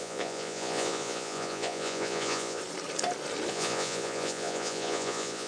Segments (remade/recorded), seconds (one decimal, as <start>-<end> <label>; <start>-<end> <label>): 0.0-2.6 remade; 2.6-3.5 recorded; 3.5-5.5 remade